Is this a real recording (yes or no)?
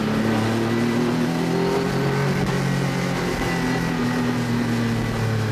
yes